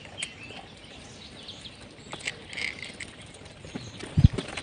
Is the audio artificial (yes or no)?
no